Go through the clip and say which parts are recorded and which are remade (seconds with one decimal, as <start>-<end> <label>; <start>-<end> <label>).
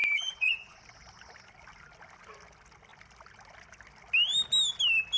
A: 0.0-0.8 remade; 0.8-5.2 recorded